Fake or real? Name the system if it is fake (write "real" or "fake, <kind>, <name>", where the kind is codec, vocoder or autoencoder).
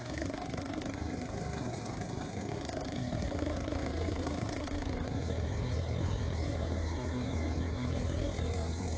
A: fake, codec, SNAC